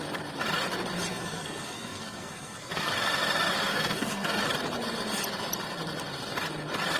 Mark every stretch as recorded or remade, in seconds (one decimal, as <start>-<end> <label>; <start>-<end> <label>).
0.0-1.1 recorded; 1.1-2.9 remade; 2.9-3.7 recorded; 3.7-4.4 remade; 4.4-7.0 recorded